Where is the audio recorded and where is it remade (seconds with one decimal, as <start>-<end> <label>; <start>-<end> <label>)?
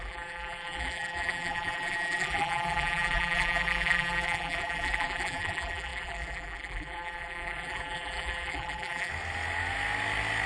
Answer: 0.0-9.1 remade; 9.1-10.5 recorded